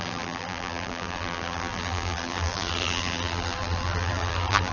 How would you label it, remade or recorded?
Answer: remade